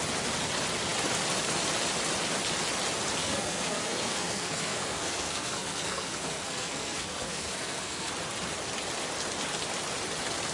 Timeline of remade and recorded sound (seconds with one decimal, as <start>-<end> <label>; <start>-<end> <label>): 0.0-3.2 recorded; 3.2-8.1 remade; 8.1-10.5 recorded